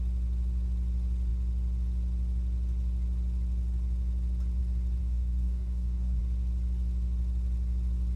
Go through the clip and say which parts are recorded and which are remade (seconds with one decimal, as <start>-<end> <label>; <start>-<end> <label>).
0.0-5.0 recorded; 5.0-6.2 remade; 6.2-8.2 recorded